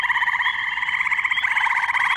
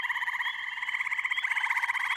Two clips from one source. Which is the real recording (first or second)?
second